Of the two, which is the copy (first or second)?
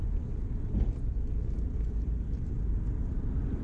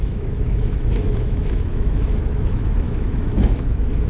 second